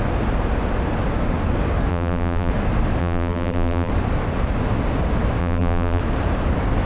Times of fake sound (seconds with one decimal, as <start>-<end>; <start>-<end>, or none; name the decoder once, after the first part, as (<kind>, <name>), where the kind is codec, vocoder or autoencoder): 1.9-2.5 (vocoder, BigVGAN v2); 3.0-3.9; 5.4-6.0